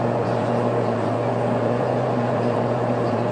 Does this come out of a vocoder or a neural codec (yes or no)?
yes